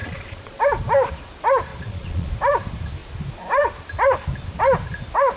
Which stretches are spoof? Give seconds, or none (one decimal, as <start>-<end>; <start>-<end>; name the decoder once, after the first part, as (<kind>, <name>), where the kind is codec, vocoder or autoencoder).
0.0-0.6 (vocoder, Vocos); 1.7-2.3